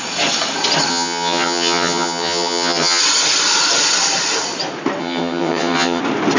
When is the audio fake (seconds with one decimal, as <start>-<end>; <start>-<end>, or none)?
0.9-3.0; 5.0-6.0